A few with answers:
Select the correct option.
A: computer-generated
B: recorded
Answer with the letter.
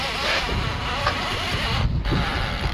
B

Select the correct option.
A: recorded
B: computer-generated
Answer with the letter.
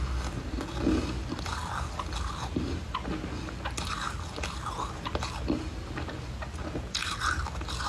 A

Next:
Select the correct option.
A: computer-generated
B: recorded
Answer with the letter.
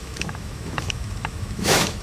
A